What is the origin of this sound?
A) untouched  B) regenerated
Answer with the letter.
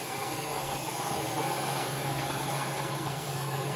B